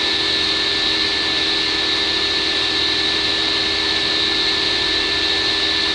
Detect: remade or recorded recorded